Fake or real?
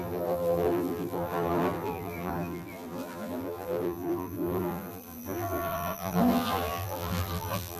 fake